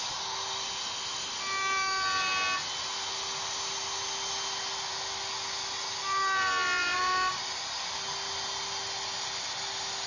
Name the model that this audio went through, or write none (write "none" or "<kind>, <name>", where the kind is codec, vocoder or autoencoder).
none